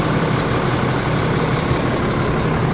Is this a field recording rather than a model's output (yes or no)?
yes